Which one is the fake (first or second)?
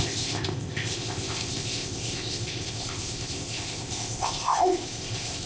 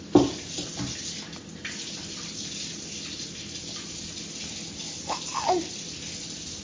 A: first